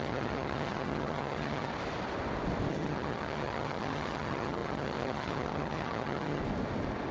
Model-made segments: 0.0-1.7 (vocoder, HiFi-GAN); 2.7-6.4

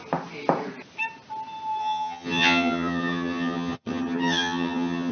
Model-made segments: 1.8-5.1 (vocoder, HiFi-GAN)

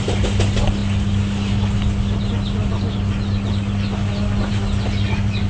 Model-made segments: none